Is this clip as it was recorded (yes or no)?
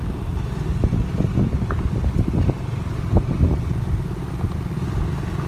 yes